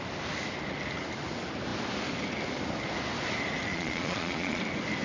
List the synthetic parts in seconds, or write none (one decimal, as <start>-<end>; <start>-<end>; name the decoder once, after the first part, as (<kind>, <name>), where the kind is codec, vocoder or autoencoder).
3.7-4.6 (vocoder, Vocos)

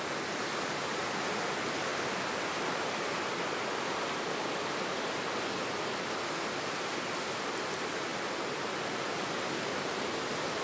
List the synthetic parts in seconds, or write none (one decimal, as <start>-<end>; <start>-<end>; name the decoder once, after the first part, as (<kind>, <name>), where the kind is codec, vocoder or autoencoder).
none

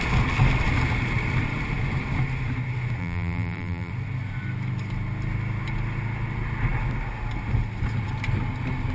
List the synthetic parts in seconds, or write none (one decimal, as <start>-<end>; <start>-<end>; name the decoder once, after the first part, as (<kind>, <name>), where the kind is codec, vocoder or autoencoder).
3.0-3.9 (vocoder, BigVGAN v2)